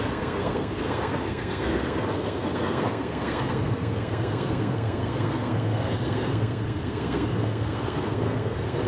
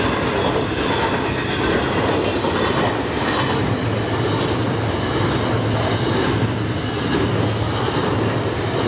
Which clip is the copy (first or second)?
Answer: first